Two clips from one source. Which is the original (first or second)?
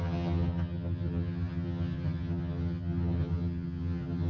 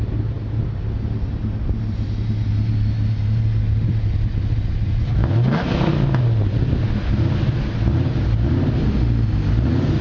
second